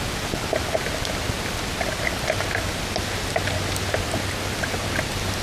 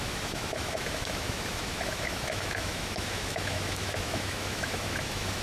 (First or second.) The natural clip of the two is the first